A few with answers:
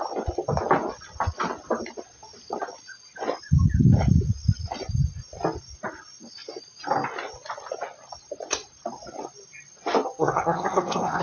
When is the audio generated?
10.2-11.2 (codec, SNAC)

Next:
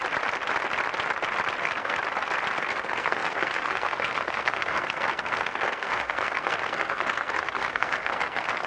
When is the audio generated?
1.6-2.0 (codec, SNAC); 2.6-8.7